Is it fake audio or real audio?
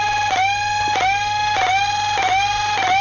real